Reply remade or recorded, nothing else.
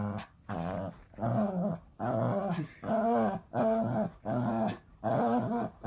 recorded